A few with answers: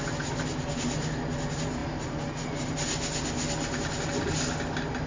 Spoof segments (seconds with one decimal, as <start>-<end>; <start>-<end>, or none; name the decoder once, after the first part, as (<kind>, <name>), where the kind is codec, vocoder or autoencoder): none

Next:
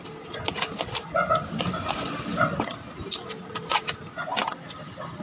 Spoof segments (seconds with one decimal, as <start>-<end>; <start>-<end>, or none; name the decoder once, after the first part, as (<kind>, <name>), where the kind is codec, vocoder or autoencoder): none

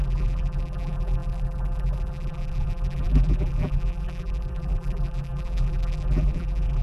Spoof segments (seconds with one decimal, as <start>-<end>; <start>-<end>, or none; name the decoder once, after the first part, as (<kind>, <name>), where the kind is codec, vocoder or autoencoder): 0.0-6.8 (vocoder, BigVGAN v2)

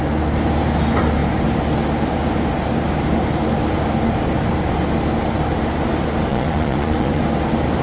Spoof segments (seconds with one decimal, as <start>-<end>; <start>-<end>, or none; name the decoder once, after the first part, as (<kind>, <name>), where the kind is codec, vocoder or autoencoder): 6.3-7.2 (vocoder, Vocos)

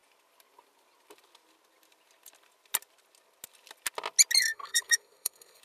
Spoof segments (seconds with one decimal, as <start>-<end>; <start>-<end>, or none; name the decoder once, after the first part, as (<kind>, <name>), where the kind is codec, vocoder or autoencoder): 4.4-5.6 (codec, SNAC)

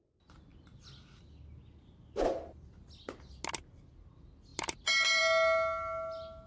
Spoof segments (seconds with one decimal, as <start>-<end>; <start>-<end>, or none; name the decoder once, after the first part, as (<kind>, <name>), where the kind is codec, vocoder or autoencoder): none

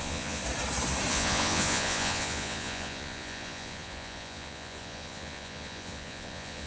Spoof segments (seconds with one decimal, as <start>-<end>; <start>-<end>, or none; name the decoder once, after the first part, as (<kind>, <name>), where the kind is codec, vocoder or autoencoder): 0.0-0.4 (vocoder, Vocos); 1.1-6.7

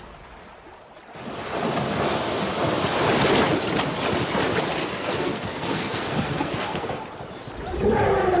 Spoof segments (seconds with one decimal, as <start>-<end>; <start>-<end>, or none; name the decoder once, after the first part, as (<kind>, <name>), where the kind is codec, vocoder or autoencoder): 4.8-7.0 (codec, SNAC)